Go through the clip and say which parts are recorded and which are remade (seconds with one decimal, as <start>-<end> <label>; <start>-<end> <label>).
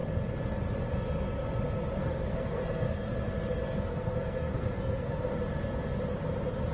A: 0.0-2.0 recorded; 2.0-3.2 remade; 3.2-3.9 recorded; 3.9-5.4 remade; 5.4-6.7 recorded